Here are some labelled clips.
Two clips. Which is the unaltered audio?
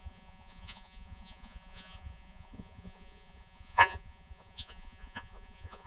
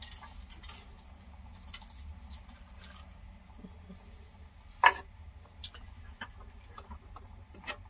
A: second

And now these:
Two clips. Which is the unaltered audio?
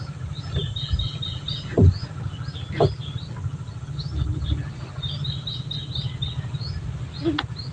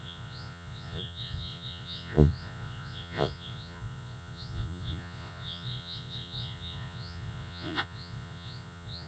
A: first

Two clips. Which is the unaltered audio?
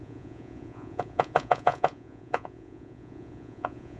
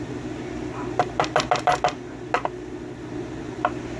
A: second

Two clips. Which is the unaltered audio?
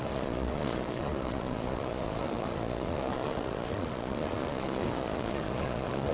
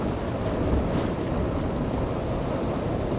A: second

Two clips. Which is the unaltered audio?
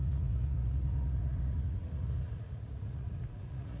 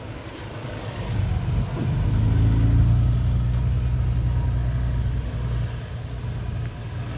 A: second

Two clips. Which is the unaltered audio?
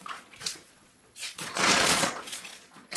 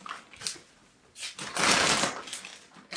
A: second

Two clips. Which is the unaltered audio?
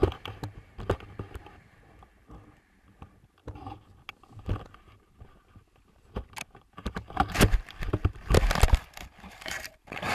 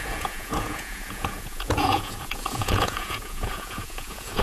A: first